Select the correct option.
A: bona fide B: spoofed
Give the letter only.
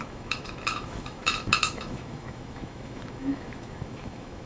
B